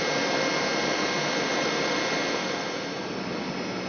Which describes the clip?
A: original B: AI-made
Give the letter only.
A